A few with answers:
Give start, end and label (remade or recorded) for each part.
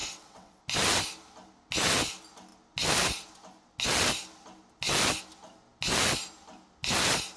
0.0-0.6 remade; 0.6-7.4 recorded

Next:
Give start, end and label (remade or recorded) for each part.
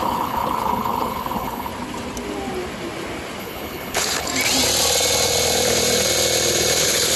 0.0-1.7 remade; 1.7-3.4 recorded; 3.4-4.3 remade; 4.3-6.8 recorded; 6.8-7.2 remade